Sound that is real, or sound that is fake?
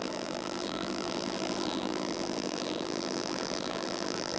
fake